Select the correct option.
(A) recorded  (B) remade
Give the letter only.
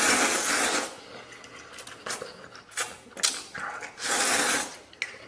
A